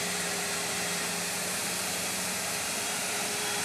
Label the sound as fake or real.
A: fake